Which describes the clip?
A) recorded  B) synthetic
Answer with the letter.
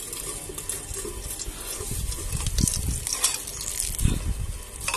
A